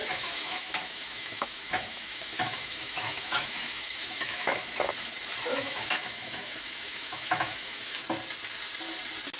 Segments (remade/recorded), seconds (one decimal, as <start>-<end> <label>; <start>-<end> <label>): 0.0-4.9 remade; 4.9-5.5 recorded; 5.5-8.0 remade; 8.0-9.4 recorded

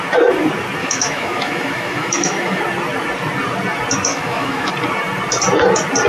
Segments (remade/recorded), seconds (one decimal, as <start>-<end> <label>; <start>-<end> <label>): 0.0-0.8 recorded; 0.8-2.6 remade; 2.6-4.1 recorded; 4.1-4.7 remade; 4.7-6.1 recorded

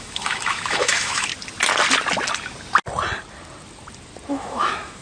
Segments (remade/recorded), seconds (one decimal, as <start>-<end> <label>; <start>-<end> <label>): 0.0-1.3 remade; 1.3-4.3 recorded; 4.3-5.0 remade

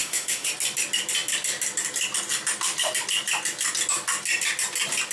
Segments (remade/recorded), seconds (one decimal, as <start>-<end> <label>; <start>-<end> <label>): 0.0-0.5 remade; 0.5-5.1 recorded